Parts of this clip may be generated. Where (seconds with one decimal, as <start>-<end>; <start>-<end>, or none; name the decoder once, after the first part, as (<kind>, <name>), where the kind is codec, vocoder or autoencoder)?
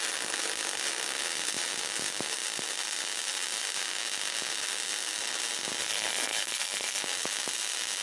5.8-7.0 (codec, SNAC)